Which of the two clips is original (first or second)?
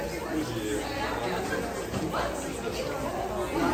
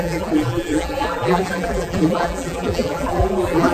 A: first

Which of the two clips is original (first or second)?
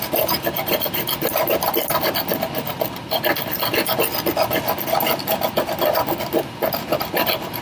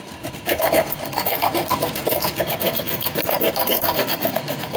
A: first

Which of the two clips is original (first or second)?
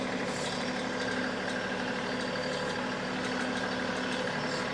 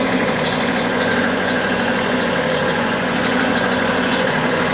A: first